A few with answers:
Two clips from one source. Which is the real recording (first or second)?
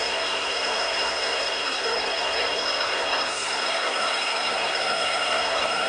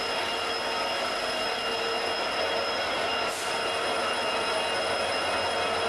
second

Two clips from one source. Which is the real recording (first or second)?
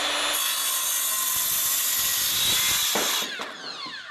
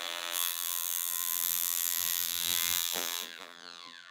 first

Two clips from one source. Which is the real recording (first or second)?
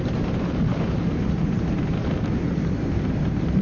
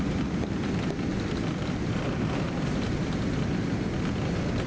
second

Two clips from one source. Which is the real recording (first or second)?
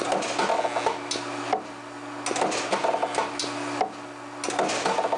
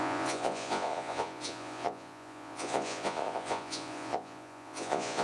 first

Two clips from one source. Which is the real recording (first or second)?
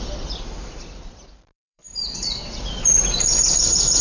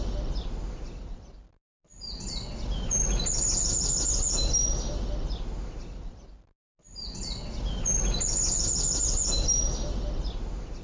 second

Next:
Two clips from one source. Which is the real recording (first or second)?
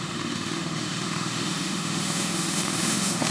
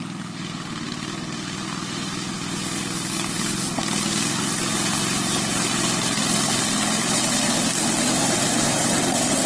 second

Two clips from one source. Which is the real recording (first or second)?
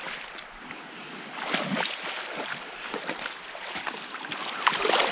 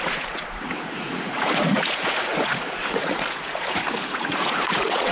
first